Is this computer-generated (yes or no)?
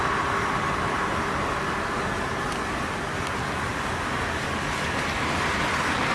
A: no